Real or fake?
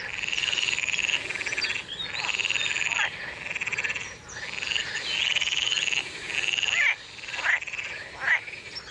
real